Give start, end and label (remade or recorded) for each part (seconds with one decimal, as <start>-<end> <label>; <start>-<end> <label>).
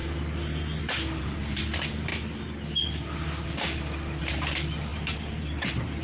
0.0-1.2 recorded; 1.2-2.1 remade; 2.1-4.2 recorded; 4.2-6.0 remade